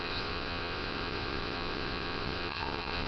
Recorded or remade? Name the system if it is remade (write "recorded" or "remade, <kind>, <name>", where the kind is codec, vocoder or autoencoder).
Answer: remade, vocoder, WaveNeXt